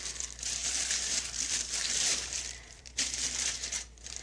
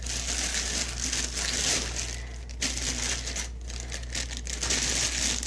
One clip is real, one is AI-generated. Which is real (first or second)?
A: second